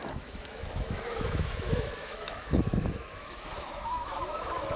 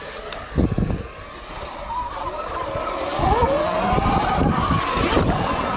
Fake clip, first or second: first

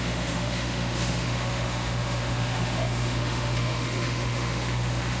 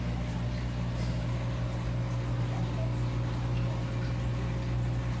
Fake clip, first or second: first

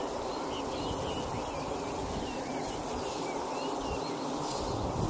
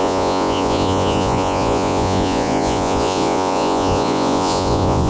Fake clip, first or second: second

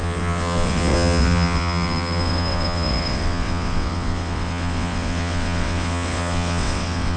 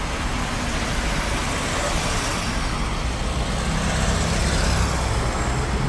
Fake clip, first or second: first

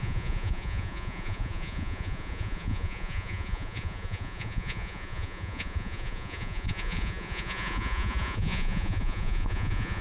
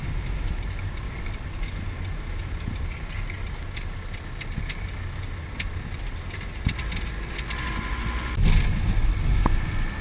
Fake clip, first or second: first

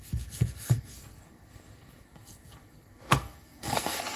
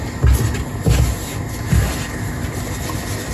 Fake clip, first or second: first